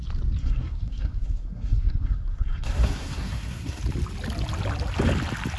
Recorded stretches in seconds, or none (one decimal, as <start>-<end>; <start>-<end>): 0.0-0.4; 3.8-5.6